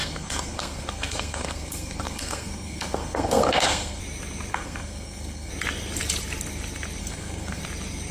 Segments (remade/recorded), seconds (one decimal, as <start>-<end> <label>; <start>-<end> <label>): 0.0-4.0 remade; 4.0-4.5 recorded; 4.5-5.5 remade; 5.5-7.0 recorded; 7.0-7.6 remade; 7.6-8.1 recorded